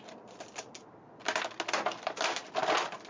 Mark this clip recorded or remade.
recorded